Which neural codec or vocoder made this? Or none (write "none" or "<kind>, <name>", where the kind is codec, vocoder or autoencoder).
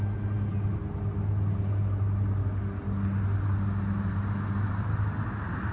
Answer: none